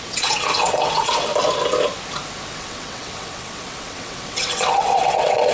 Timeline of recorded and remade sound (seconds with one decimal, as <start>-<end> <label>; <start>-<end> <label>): 0.0-1.3 remade; 1.3-2.5 recorded; 2.5-5.5 remade